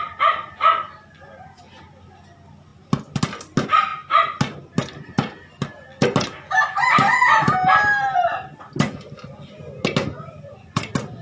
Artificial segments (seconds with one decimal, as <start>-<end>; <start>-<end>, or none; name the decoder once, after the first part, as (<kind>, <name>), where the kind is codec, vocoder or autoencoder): none